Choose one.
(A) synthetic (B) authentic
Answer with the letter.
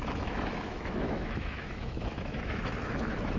A